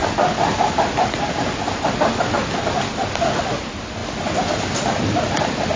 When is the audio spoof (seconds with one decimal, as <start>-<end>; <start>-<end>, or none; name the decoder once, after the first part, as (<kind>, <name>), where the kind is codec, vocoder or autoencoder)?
none